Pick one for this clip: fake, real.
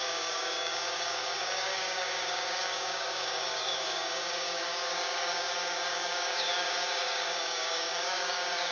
fake